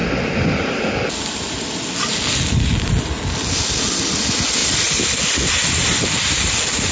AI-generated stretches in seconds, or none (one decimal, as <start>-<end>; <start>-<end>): none